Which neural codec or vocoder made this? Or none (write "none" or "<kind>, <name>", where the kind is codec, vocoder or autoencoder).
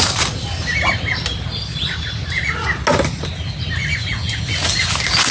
none